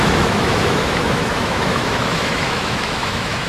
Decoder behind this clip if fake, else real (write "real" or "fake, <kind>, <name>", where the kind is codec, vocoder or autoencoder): fake, autoencoder, DAC-VAE